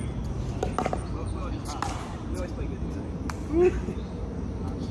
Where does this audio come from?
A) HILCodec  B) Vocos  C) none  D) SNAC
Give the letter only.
C